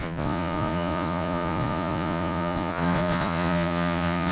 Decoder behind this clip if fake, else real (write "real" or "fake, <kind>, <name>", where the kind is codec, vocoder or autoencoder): fake, vocoder, Vocos